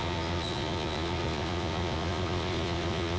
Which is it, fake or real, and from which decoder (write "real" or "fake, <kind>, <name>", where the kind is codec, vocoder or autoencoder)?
fake, vocoder, Vocos